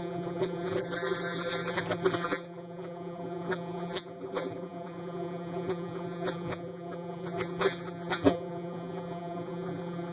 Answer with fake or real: fake